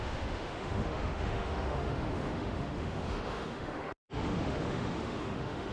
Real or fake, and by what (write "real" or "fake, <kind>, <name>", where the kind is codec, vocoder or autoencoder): fake, autoencoder, DAC-VAE